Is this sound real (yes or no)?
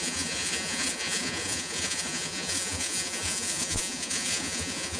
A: no